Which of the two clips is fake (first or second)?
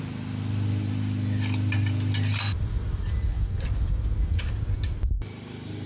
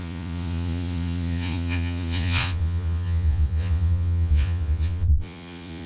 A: second